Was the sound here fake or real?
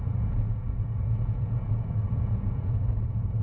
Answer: fake